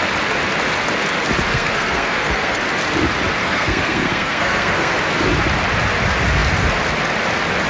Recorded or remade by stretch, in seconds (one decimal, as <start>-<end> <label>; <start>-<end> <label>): 0.0-1.5 recorded; 1.5-2.6 remade; 2.6-3.4 recorded; 3.4-4.9 remade; 4.9-7.7 recorded